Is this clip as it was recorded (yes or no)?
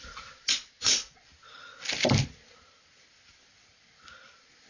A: yes